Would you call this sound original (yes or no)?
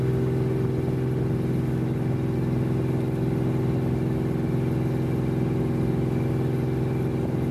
yes